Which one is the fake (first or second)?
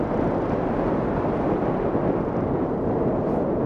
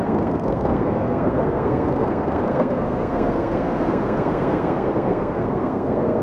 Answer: second